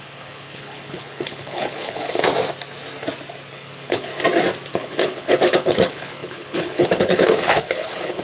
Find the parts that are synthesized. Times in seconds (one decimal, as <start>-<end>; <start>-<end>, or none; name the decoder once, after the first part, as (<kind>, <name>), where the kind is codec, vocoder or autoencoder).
0.0-2.3 (codec, HILCodec); 3.5-4.1; 4.7-8.2